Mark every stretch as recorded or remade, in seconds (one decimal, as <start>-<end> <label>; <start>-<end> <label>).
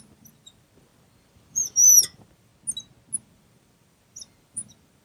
0.0-2.5 remade; 2.5-3.2 recorded; 3.2-5.0 remade